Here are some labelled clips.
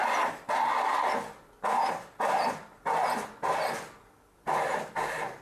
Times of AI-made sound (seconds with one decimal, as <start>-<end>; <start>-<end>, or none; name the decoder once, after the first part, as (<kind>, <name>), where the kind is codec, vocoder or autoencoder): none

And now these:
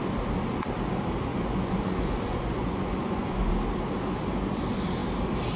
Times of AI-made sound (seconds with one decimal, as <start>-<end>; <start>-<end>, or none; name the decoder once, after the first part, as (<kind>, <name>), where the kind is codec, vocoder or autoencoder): 1.3-3.5 (vocoder, Vocos)

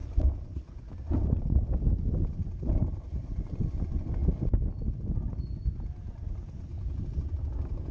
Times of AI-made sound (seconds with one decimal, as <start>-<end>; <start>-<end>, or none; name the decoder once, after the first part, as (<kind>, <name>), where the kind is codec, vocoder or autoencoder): 2.3-4.2 (vocoder, BigVGAN v2); 6.3-7.9

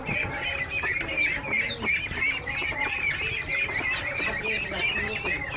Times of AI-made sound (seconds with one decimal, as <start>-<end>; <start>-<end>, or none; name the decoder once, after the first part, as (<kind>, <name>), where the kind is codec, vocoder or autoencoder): none